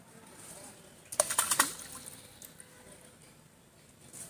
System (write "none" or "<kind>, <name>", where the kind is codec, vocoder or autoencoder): none